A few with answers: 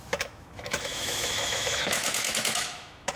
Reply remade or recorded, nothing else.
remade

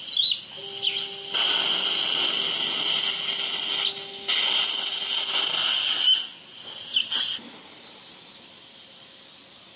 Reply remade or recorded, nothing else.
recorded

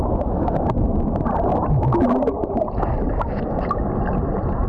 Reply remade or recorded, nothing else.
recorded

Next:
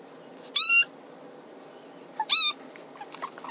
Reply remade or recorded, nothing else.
recorded